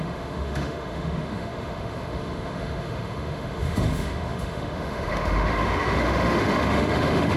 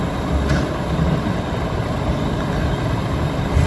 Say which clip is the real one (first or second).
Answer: second